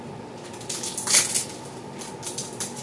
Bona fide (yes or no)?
yes